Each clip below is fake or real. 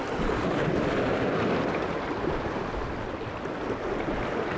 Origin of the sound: real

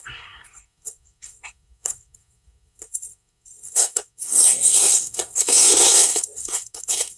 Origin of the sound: fake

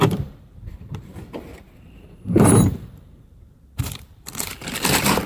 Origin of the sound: fake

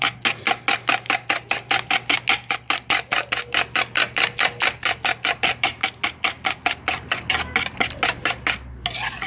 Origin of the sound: real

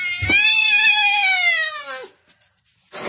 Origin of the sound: real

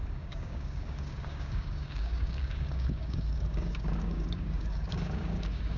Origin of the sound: fake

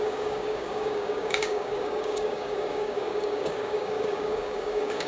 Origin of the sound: fake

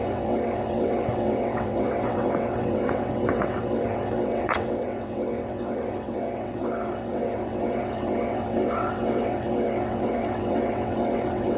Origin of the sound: fake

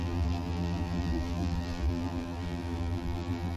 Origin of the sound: fake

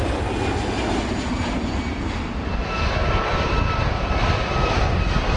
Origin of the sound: real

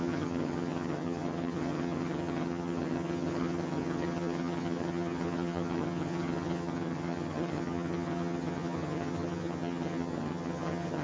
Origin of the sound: fake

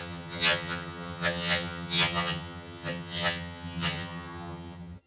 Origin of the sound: fake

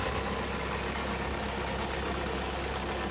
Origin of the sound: real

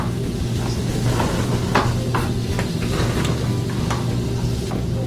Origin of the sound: real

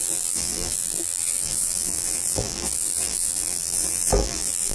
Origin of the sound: fake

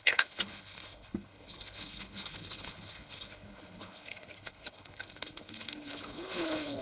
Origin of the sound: fake